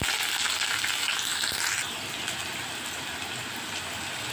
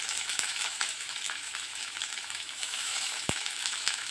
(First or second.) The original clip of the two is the first